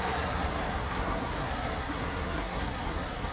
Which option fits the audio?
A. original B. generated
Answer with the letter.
B